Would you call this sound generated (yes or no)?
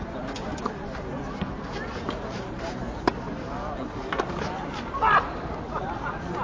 no